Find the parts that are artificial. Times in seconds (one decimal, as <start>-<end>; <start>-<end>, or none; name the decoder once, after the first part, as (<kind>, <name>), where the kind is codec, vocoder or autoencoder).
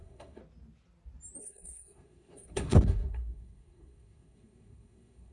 0.0-0.4 (codec, SNAC); 1.4-5.3